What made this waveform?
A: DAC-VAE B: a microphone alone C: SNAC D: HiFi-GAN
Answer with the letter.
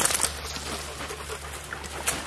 B